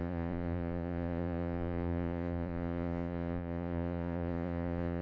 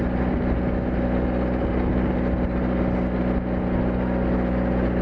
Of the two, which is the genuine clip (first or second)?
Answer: second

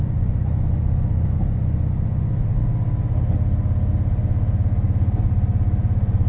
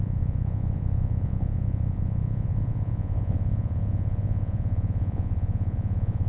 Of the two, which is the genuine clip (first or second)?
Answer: first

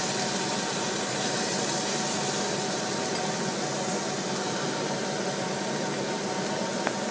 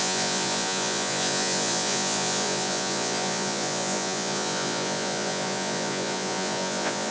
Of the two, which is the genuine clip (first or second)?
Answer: first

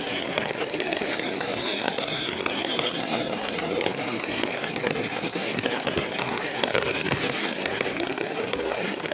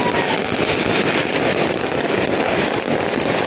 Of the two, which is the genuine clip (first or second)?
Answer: second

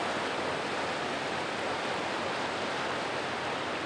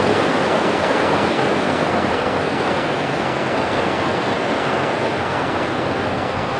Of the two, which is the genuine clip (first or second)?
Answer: first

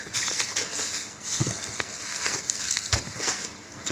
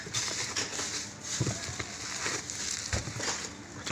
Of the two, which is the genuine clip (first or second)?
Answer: second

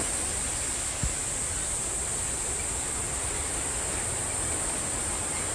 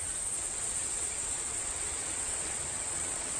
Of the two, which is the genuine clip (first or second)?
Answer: first